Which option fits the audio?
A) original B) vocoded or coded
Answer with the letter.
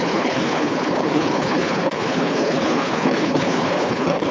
B